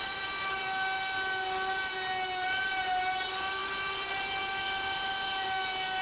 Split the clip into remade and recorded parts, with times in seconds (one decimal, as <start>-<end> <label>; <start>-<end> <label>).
0.0-6.0 recorded